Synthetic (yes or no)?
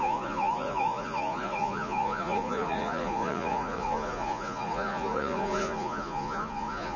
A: yes